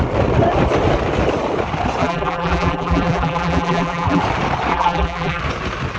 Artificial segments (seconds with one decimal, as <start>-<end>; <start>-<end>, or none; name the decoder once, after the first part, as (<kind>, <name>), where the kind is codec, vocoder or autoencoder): 2.0-4.2 (vocoder, BigVGAN v2); 4.7-5.4